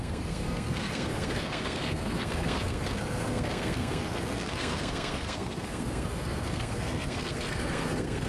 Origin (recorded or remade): remade